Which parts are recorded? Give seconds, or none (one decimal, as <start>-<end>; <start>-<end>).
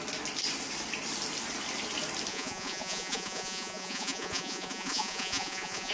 0.0-2.3